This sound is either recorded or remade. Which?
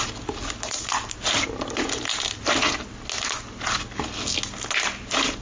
recorded